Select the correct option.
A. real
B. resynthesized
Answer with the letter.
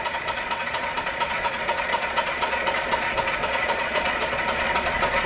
B